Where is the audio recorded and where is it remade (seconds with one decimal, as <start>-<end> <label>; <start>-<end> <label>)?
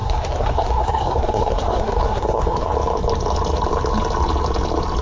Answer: 0.0-2.7 remade; 2.7-5.0 recorded